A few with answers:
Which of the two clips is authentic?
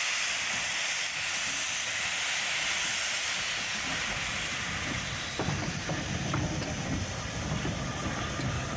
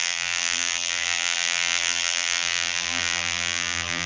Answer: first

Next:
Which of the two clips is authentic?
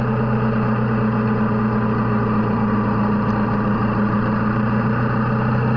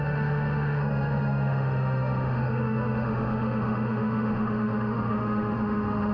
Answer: first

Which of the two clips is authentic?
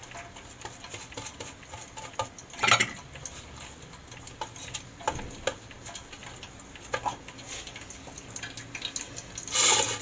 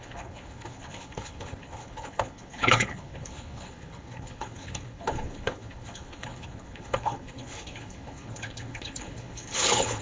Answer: first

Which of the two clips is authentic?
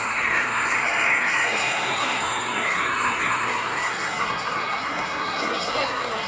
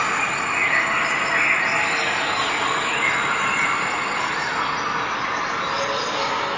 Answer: second